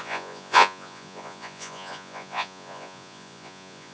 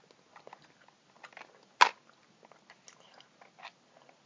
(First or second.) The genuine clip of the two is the second